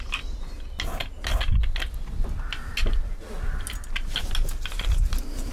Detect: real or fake real